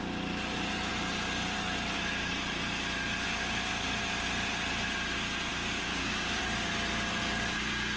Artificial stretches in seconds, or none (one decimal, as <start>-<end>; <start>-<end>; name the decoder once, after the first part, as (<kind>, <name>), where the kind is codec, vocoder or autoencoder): 5.5-6.4 (codec, DAC)